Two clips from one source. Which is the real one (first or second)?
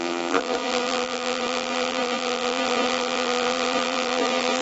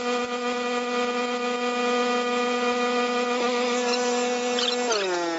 second